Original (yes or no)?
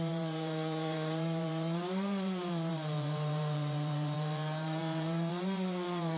no